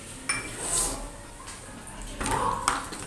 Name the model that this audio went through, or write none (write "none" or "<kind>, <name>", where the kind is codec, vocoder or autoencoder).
none